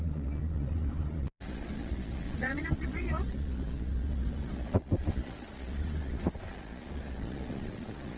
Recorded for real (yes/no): no